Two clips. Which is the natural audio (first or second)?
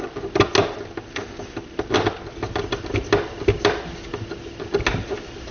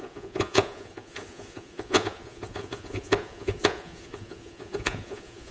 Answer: first